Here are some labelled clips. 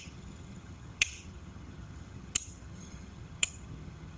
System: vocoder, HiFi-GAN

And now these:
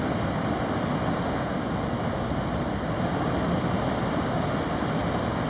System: none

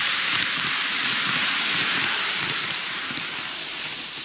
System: vocoder, BigVGAN v2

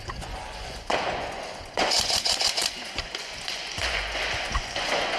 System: vocoder, Vocos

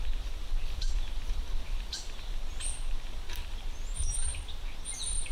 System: none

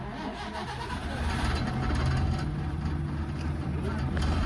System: none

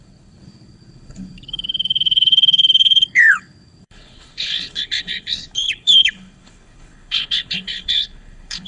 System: codec, HILCodec